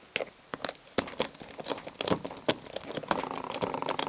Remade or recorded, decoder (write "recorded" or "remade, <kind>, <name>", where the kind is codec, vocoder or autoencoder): recorded